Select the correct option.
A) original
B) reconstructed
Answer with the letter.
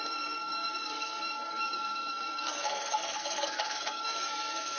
B